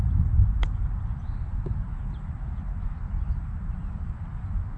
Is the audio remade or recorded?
recorded